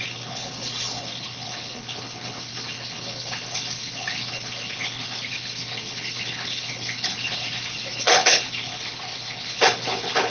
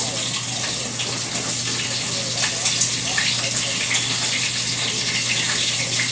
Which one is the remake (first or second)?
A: first